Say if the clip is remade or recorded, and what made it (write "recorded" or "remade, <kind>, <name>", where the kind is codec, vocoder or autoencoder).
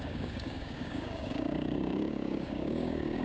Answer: remade, codec, DAC